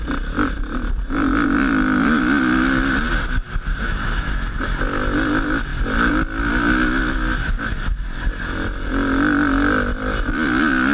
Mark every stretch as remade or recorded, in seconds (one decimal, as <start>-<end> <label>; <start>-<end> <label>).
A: 0.0-3.7 recorded; 3.7-4.3 remade; 4.3-10.9 recorded